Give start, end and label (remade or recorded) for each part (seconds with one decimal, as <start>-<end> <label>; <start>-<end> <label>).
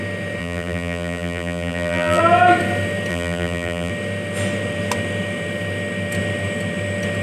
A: 0.0-0.4 recorded; 0.4-2.2 remade; 2.2-3.1 recorded; 3.1-3.9 remade; 3.9-7.2 recorded